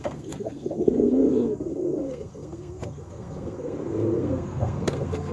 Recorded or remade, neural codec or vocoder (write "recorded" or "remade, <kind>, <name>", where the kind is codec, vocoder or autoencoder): remade, codec, SNAC